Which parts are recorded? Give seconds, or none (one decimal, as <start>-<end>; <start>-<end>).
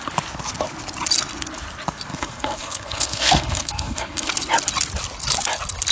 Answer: 0.0-2.1; 4.3-5.9